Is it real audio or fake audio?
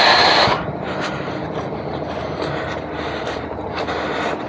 real